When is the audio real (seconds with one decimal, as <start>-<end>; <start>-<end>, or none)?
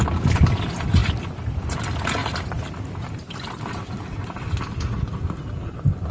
0.0-2.2; 3.3-6.1